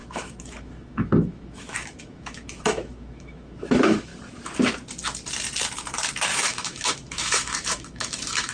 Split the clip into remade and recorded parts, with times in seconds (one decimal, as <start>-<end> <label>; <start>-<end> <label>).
0.0-4.1 remade; 4.1-6.3 recorded; 6.3-8.5 remade